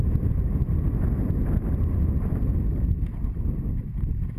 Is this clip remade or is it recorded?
recorded